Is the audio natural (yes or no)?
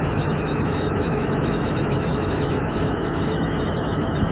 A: no